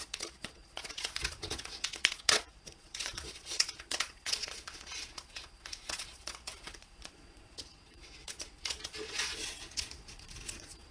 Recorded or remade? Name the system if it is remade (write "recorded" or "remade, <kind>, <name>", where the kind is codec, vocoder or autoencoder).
remade, vocoder, Vocos